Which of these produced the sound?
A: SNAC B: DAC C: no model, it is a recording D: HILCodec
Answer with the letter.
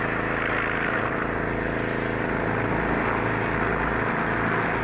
C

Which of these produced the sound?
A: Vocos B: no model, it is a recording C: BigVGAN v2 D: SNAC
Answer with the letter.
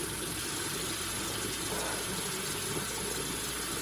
B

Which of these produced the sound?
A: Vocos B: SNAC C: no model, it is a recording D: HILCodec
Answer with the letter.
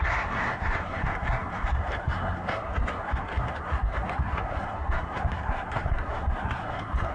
B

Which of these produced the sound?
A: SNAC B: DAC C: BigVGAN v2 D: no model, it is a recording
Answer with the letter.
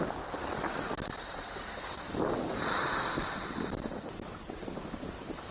D